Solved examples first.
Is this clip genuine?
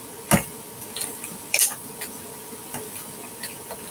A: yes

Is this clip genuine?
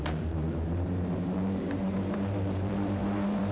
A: no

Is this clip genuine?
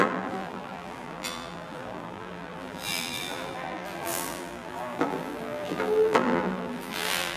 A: no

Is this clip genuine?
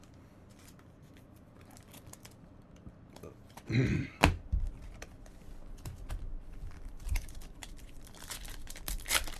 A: no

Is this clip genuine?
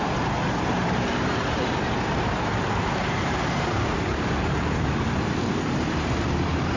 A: no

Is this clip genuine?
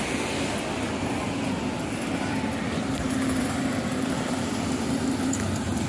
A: no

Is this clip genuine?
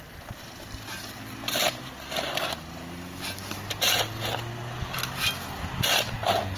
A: yes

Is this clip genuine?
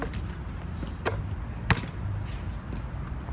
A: yes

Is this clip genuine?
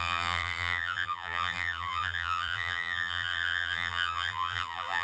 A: no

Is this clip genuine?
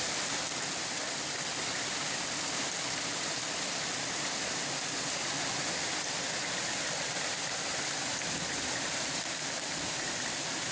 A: no